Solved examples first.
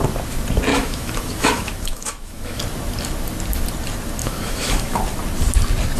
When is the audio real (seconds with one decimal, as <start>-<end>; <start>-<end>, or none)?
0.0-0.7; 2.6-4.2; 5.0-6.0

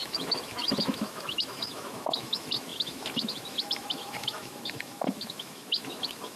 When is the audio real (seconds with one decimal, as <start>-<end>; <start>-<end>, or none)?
none

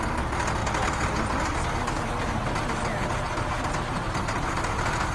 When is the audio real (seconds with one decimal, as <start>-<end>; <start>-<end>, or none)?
0.0-5.1